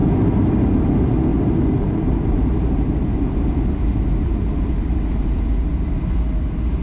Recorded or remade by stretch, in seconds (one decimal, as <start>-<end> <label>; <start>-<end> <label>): 0.0-1.3 recorded; 1.3-4.5 remade; 4.5-6.8 recorded